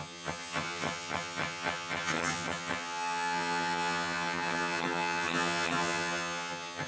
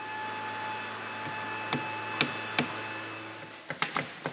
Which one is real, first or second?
second